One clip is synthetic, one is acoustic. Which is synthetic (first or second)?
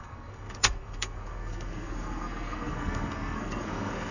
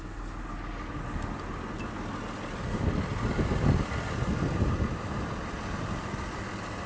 first